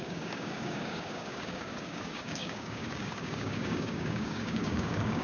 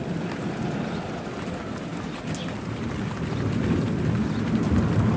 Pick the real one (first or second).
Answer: second